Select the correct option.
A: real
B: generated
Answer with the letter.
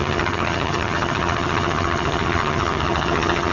B